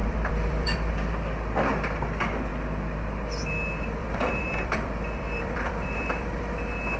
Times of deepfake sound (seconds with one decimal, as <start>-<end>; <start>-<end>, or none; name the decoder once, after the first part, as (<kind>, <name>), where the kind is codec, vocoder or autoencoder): 0.0-0.9 (vocoder, BigVGAN v2); 4.0-6.5